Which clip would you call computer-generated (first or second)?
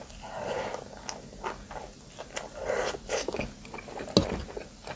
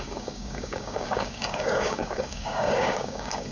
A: second